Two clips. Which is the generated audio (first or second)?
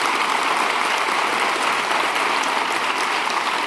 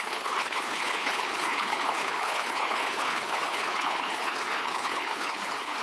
second